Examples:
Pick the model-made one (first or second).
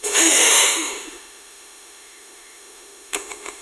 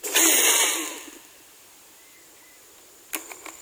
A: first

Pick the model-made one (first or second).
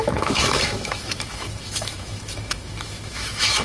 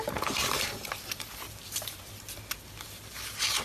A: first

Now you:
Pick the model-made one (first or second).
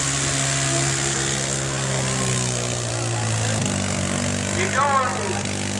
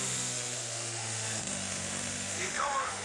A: second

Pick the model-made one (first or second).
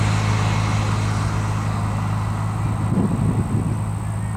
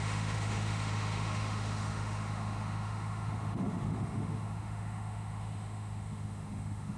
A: second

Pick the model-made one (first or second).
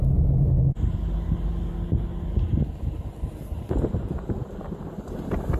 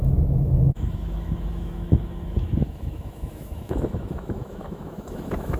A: second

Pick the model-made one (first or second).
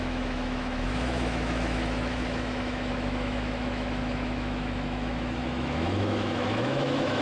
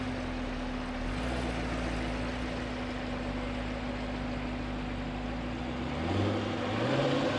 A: first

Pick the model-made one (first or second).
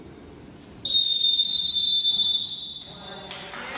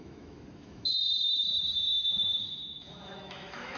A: second